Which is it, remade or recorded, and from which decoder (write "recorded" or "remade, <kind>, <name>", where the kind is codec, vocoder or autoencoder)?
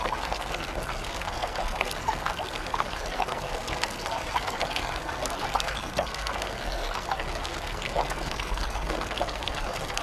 remade, codec, SNAC